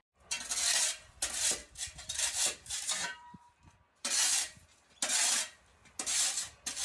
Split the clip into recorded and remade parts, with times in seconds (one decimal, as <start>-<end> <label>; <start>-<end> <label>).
0.0-1.6 recorded; 1.6-4.9 remade; 4.9-6.8 recorded